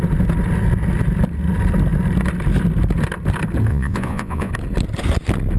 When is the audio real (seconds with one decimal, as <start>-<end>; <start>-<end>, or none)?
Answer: 0.0-3.7; 4.5-5.6